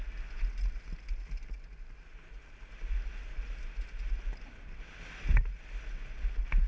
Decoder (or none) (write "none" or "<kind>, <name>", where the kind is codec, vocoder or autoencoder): none